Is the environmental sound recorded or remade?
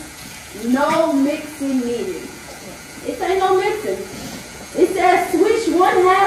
remade